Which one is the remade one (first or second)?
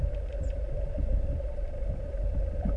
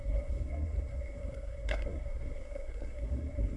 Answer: second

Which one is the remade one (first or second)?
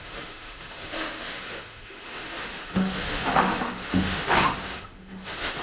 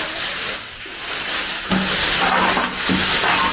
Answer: first